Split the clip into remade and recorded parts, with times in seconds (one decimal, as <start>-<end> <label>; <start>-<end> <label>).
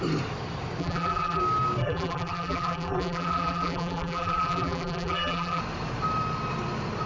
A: 0.0-0.8 recorded; 0.8-1.4 remade; 1.4-1.8 recorded; 1.8-5.6 remade; 5.6-7.1 recorded